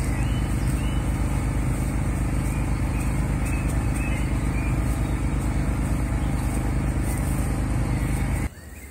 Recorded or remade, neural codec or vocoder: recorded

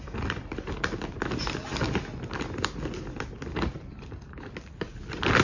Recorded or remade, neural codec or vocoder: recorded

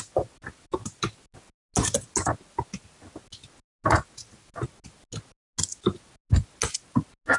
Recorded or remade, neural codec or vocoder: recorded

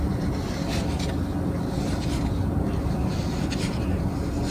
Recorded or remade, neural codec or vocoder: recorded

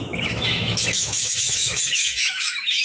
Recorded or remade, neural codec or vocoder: remade, autoencoder, DAC-VAE